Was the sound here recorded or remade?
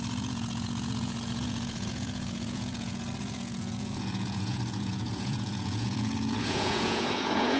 remade